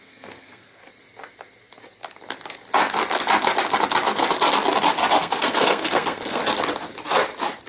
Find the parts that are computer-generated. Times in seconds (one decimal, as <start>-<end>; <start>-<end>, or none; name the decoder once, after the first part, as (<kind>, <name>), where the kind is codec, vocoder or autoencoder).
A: 0.0-0.8 (codec, SNAC); 5.2-6.4